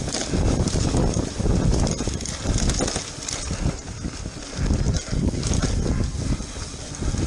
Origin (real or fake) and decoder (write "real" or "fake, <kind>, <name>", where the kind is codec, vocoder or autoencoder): real